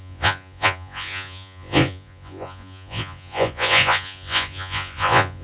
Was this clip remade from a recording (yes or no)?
yes